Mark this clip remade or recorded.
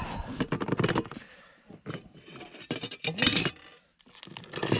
recorded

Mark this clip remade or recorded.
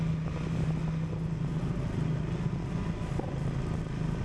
recorded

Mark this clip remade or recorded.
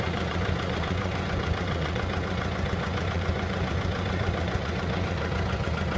remade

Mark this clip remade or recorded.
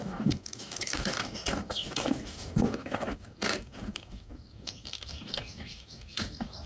remade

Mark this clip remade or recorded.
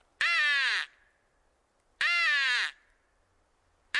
recorded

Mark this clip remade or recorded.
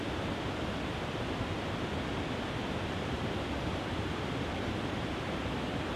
remade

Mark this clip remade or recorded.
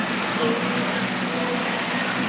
recorded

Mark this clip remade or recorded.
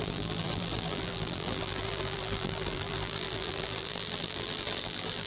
remade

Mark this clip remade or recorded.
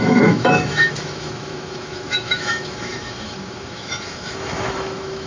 remade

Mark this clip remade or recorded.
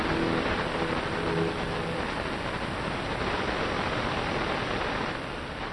recorded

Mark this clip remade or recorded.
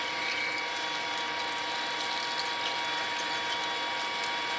recorded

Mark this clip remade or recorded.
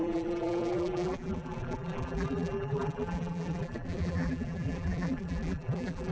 remade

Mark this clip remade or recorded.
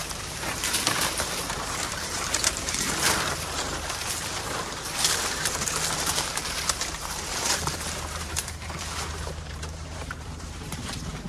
remade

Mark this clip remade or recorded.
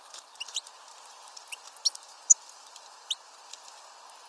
recorded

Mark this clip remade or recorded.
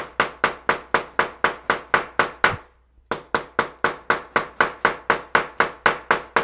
recorded